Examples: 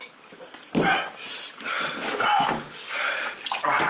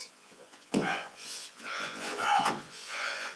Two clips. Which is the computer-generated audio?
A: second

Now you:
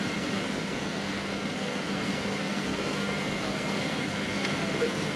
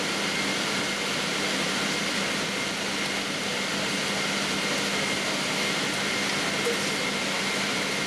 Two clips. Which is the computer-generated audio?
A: first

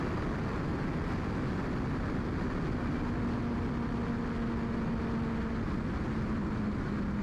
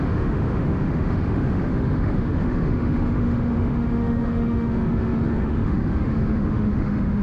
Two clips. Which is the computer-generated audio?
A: second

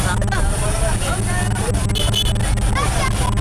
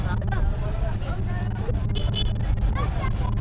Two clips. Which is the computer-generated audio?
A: second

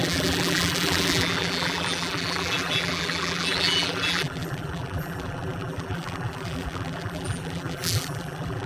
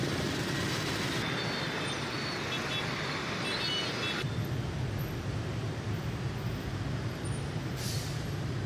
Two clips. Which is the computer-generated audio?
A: first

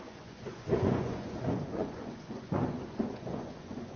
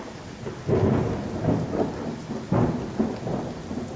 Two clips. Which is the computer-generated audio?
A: first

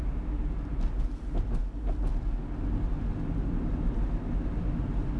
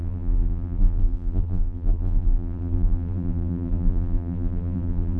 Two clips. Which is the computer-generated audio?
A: second